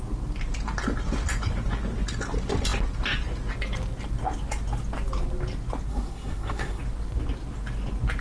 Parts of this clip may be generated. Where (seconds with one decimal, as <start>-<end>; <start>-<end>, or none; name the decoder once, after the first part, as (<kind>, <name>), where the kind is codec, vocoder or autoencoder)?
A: 5.9-6.8 (codec, SNAC)

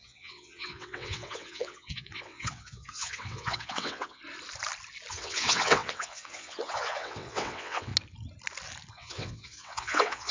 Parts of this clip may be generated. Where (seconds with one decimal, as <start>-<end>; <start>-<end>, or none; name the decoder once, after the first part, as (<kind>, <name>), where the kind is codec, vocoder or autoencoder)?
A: 0.0-4.2 (vocoder, WaveNeXt); 5.1-7.9; 8.9-10.3

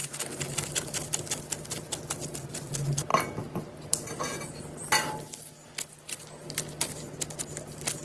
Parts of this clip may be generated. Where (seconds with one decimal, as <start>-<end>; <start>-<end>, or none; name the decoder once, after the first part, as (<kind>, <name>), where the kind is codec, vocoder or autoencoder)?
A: none

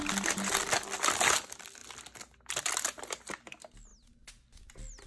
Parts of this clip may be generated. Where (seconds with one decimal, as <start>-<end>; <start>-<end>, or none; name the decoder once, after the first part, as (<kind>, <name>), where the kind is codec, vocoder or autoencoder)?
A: none

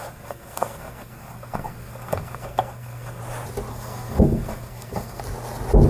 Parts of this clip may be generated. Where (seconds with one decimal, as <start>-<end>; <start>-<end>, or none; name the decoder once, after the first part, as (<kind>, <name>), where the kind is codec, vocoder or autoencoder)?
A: 0.0-3.2 (codec, SNAC); 3.7-5.2

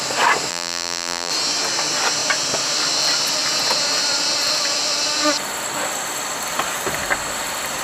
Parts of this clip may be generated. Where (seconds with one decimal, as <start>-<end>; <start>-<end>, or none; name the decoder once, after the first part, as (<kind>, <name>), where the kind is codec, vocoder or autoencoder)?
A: 0.5-1.3 (vocoder, BigVGAN v2)